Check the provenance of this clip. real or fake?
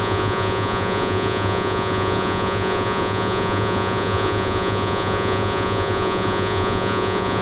fake